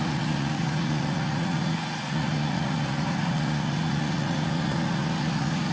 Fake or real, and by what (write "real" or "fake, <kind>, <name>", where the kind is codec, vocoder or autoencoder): fake, vocoder, Vocos